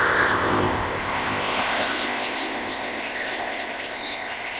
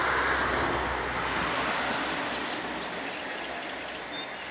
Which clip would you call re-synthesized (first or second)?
first